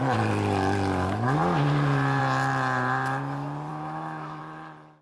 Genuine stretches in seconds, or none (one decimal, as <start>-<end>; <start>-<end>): 0.0-3.7; 4.4-5.0